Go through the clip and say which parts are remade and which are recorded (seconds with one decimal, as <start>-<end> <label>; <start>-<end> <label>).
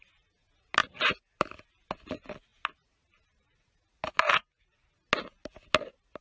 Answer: 0.0-0.8 recorded; 0.8-1.6 remade; 1.6-6.2 recorded